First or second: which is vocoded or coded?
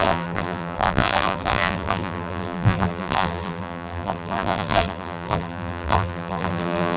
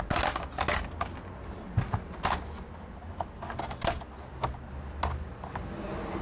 first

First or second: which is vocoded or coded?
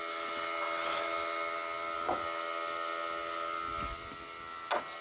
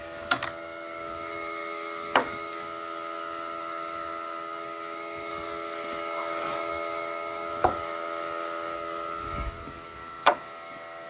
second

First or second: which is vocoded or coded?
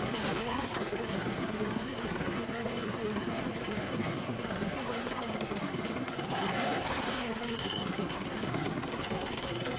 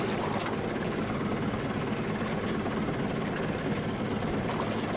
first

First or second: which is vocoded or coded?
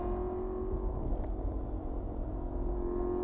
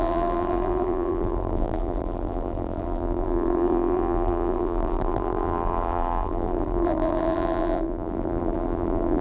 second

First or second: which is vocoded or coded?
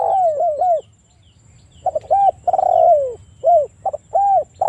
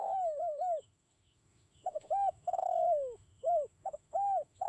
second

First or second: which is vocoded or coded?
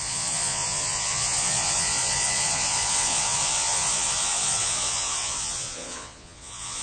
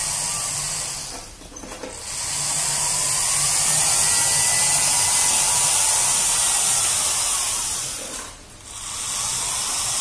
first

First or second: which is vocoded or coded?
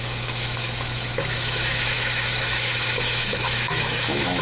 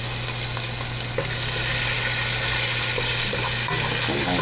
first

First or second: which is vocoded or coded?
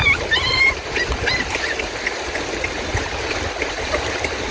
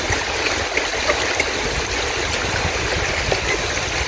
first